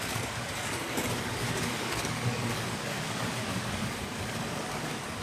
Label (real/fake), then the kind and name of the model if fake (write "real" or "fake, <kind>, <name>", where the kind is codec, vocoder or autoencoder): fake, codec, DAC